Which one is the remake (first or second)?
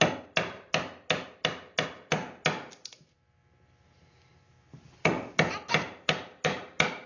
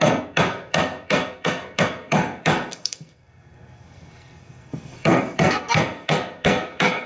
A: second